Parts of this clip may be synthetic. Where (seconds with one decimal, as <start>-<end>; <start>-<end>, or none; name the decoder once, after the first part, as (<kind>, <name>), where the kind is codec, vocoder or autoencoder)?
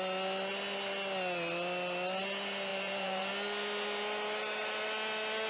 2.7-3.3 (vocoder, BigVGAN v2)